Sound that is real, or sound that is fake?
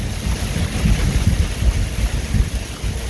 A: real